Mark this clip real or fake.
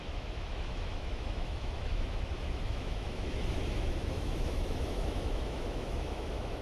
fake